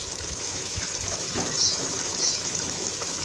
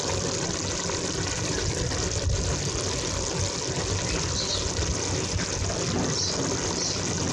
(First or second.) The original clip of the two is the second